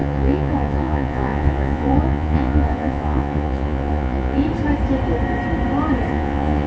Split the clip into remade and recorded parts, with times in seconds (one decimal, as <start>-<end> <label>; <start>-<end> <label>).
0.0-4.4 remade; 4.4-6.1 recorded; 6.1-6.7 remade